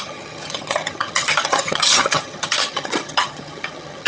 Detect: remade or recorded remade